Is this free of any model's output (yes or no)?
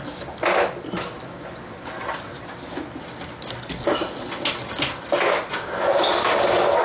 yes